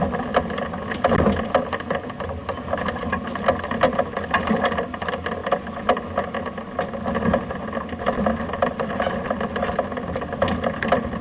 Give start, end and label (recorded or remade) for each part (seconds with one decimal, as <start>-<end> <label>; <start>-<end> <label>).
0.0-11.2 recorded